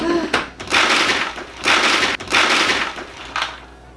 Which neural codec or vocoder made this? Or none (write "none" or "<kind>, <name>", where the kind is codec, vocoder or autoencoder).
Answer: none